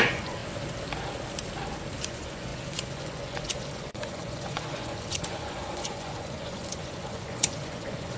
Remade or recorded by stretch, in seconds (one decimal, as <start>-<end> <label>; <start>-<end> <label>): 0.0-0.4 remade; 0.4-2.0 recorded; 2.0-8.2 remade